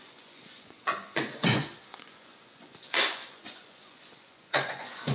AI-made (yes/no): yes